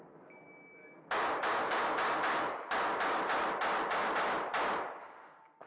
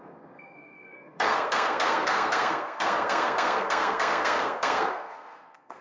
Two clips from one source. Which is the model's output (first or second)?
second